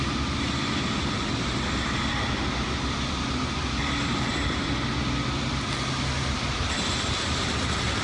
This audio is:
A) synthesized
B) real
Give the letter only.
B